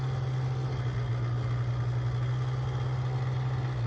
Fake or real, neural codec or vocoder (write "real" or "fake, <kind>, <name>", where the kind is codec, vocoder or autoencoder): real